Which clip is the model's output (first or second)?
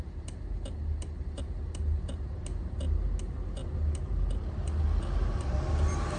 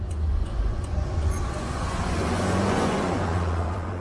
second